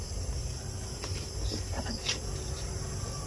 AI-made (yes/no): yes